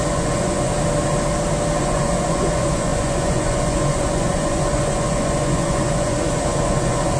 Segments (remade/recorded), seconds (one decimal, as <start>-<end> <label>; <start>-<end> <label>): 0.0-0.7 remade; 0.7-1.8 recorded; 1.8-7.2 remade